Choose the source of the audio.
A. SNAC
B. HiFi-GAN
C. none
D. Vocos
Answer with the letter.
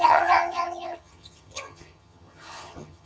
B